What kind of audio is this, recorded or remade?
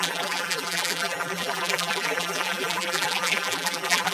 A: remade